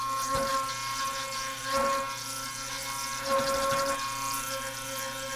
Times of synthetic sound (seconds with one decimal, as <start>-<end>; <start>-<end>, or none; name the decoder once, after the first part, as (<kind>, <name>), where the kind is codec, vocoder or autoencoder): none